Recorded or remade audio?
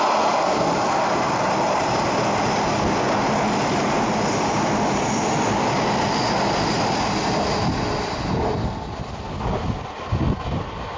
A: recorded